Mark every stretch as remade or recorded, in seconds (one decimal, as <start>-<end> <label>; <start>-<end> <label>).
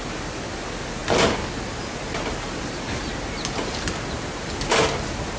0.0-5.4 recorded